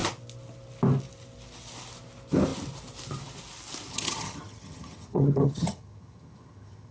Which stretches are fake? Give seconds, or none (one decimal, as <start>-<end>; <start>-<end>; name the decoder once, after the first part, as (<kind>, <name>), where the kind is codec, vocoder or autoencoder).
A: 3.9-6.9 (vocoder, HiFi-GAN)